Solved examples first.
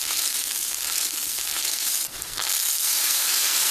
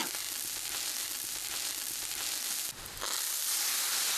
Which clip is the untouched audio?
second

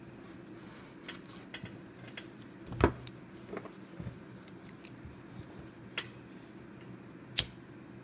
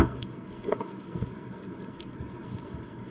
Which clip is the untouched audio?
first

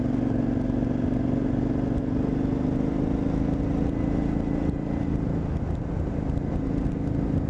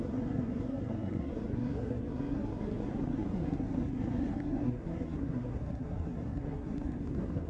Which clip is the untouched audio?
first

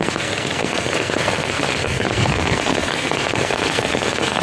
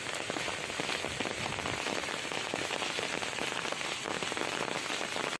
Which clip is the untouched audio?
second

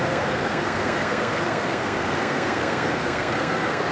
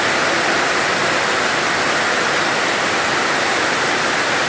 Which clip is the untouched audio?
second